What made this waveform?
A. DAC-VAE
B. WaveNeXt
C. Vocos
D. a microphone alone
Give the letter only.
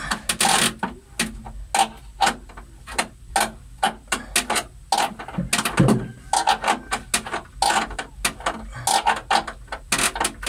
D